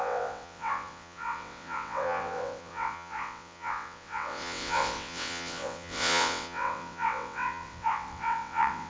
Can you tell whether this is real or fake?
fake